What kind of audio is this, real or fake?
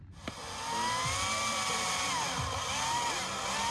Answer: real